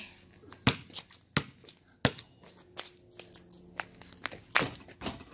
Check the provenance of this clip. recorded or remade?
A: recorded